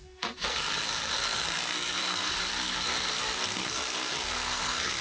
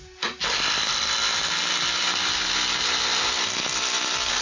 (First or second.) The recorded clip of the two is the second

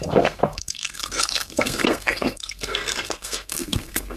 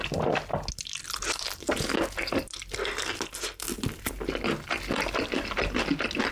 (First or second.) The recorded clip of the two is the second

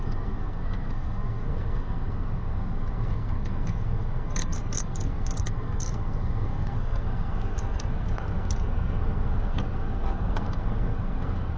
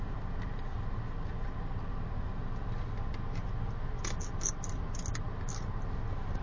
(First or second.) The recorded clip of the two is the second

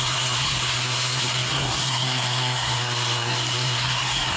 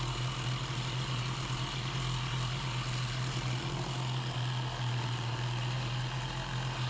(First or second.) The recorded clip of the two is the second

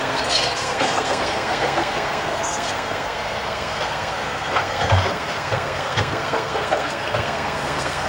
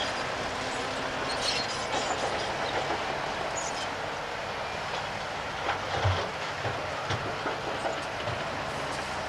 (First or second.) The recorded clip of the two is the second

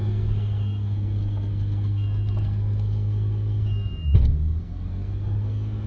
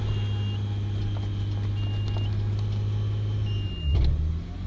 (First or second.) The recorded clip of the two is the second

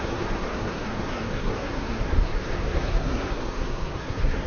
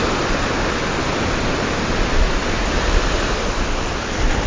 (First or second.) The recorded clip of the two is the second